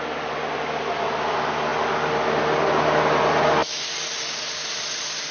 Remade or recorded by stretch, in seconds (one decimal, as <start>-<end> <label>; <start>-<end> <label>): 0.0-5.3 recorded

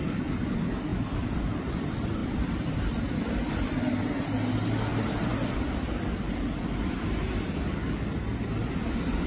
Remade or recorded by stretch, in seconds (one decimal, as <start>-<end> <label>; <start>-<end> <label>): 0.0-0.9 recorded; 0.9-1.7 remade; 1.7-2.2 recorded; 2.2-3.2 remade; 3.2-4.9 recorded; 4.9-5.6 remade; 5.6-9.3 recorded

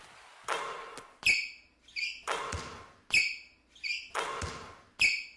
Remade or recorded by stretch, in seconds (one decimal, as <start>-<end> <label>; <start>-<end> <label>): 0.0-5.4 recorded

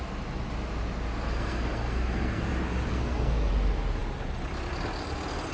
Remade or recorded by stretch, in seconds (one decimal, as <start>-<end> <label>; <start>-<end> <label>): 0.0-1.3 recorded; 1.3-2.4 remade; 2.4-2.9 recorded; 2.9-3.5 remade; 3.5-5.5 recorded

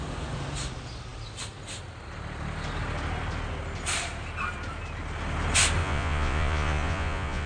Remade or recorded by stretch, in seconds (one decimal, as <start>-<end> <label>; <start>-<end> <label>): 0.0-5.8 recorded; 5.8-7.5 remade

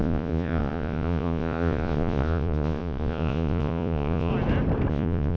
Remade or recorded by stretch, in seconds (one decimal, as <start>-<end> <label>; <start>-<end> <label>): 0.0-4.3 remade; 4.3-4.9 recorded; 4.9-5.4 remade